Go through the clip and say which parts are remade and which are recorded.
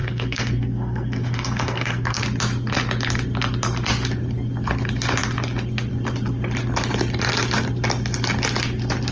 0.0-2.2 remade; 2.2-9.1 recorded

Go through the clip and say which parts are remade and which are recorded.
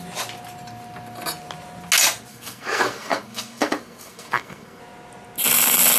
0.0-2.3 recorded; 2.3-4.8 remade; 4.8-6.0 recorded